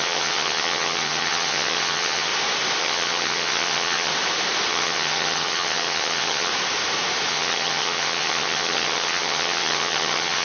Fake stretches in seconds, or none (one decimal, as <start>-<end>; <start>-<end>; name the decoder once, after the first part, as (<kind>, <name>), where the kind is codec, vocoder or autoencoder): 0.0-2.3 (vocoder, HiFi-GAN); 2.8-4.1; 4.7-6.5; 7.3-10.4